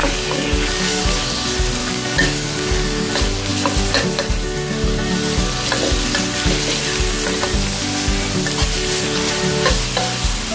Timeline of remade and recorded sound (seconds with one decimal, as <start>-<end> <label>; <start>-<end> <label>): 0.0-1.0 remade; 1.0-1.8 recorded; 1.8-3.1 remade; 3.1-10.5 recorded